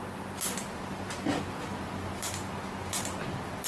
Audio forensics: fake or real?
real